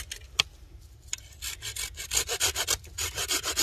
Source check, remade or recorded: recorded